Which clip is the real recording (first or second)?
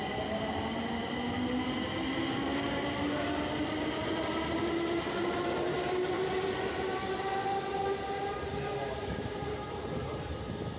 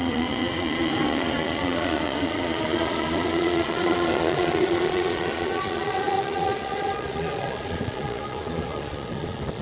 first